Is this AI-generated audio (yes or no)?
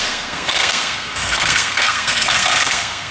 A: yes